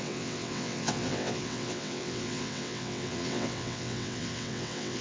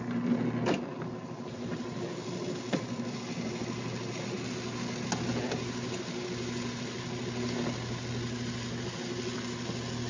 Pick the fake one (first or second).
first